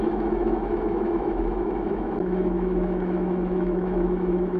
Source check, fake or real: fake